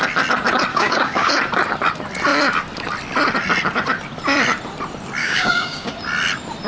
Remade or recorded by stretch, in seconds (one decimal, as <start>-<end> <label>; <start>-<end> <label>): 0.0-0.7 recorded; 0.7-1.3 remade; 1.3-5.2 recorded; 5.2-5.9 remade; 5.9-6.7 recorded